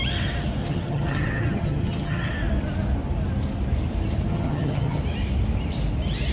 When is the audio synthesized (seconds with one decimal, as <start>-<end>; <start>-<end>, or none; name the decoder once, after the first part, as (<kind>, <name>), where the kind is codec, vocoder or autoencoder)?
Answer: 0.6-2.3 (vocoder, HiFi-GAN); 4.3-5.0